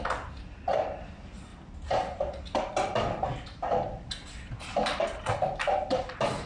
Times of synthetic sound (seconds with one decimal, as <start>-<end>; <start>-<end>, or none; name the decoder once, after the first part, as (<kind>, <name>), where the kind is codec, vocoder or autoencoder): none